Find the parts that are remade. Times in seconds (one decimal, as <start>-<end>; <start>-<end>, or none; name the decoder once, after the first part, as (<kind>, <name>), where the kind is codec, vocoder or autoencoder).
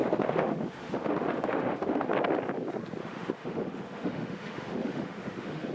0.0-2.1 (autoencoder, DAC-VAE); 3.0-5.7